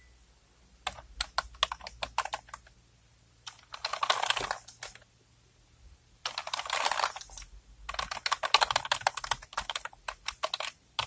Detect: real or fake real